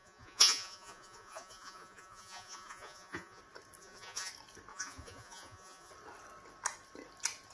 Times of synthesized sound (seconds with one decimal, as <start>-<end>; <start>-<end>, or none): 0.0-3.4; 3.8-4.3; 4.7-5.9